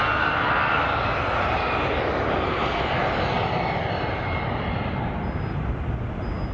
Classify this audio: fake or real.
real